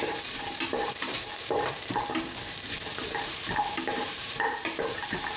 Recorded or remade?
remade